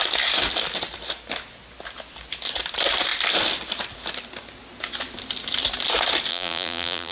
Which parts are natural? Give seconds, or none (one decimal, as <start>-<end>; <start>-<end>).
0.0-6.3